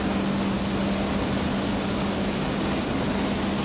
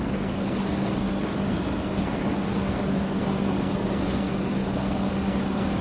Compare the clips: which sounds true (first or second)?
first